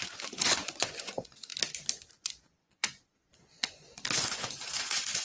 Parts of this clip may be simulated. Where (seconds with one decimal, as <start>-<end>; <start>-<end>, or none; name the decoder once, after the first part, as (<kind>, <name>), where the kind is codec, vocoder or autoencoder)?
0.0-1.5 (vocoder, Vocos); 2.1-5.2